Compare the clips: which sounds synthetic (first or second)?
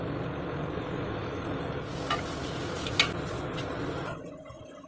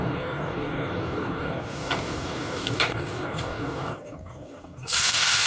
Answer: second